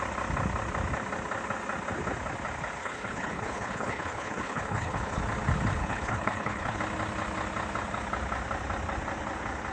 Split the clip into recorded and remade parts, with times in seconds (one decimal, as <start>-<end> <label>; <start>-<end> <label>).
0.0-2.8 recorded; 2.8-5.2 remade; 5.2-5.8 recorded; 5.8-6.8 remade; 6.8-9.7 recorded

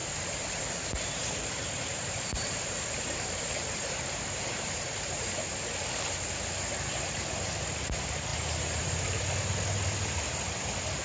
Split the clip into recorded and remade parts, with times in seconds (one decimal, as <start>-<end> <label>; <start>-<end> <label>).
0.0-4.8 remade; 4.8-8.3 recorded; 8.3-9.2 remade; 9.2-11.0 recorded

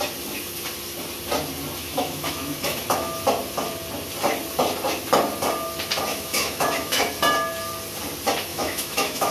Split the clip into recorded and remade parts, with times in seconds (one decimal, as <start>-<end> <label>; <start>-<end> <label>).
0.0-1.8 recorded; 1.8-3.1 remade; 3.1-6.1 recorded; 6.1-7.1 remade; 7.1-8.5 recorded; 8.5-9.3 remade

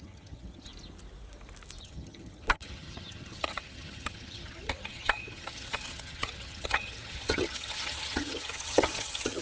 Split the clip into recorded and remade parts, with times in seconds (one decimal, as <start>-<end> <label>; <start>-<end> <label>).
0.0-0.7 remade; 0.7-1.8 recorded; 1.8-9.4 remade

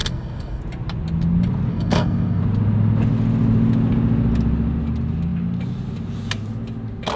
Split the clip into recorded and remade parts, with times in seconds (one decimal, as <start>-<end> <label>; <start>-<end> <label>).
0.0-0.6 remade; 0.6-1.7 recorded; 1.7-2.4 remade; 2.4-7.2 recorded